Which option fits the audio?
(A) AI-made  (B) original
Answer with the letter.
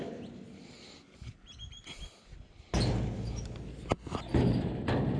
B